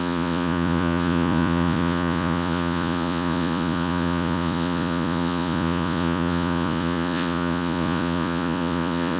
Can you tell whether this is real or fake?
fake